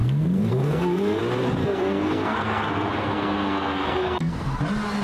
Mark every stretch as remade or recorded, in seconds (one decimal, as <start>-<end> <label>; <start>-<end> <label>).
0.0-1.2 remade; 1.2-1.6 recorded; 1.6-4.6 remade; 4.6-5.0 recorded